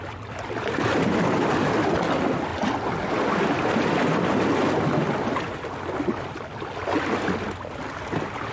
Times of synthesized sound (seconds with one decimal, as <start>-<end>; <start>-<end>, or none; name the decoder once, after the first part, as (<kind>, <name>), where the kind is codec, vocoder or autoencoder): none